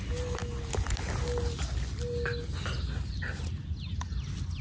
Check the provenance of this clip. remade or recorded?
recorded